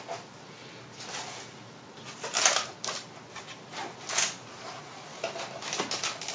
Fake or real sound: real